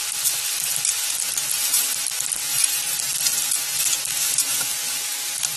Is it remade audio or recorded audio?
recorded